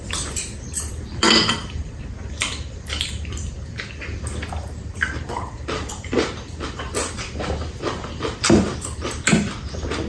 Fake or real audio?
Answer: fake